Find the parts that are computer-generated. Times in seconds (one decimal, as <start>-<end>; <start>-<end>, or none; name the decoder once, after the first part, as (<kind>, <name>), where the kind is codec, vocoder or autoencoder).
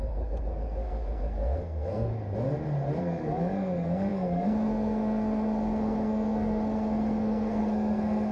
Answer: 0.0-2.1 (codec, SNAC); 3.0-8.3